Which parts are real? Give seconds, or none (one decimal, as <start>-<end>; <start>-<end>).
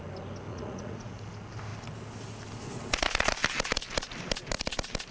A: 0.0-0.5; 1.2-5.1